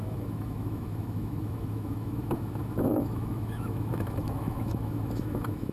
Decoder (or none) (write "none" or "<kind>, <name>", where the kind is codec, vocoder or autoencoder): autoencoder, DAC-VAE